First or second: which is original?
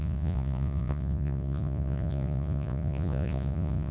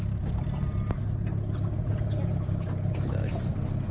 second